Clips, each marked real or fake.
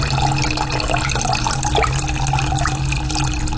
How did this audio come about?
real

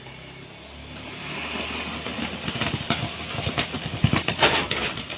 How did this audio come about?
real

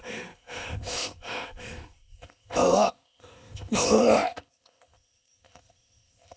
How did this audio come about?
fake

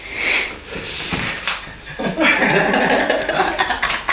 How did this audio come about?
real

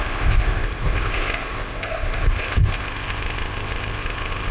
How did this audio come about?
fake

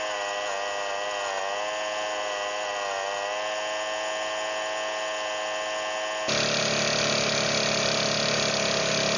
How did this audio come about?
real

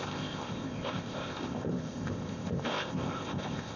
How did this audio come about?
fake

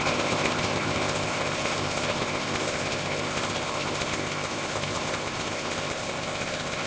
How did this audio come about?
fake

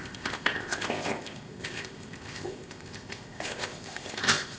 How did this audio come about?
fake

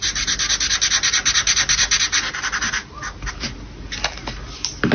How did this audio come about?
real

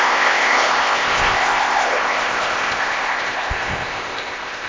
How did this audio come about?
fake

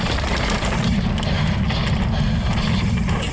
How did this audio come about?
real